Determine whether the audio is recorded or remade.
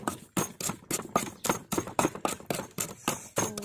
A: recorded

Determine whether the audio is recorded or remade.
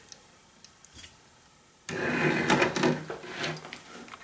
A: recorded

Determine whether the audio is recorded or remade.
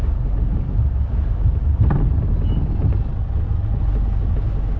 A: recorded